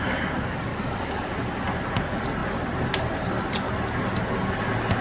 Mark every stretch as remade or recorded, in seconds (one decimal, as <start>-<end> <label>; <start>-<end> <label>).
0.0-0.7 recorded; 0.7-1.3 remade; 1.3-5.0 recorded